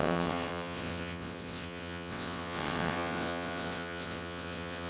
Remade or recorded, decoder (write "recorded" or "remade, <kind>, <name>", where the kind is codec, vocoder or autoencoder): remade, vocoder, WaveNeXt